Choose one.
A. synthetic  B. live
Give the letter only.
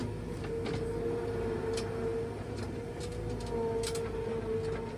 B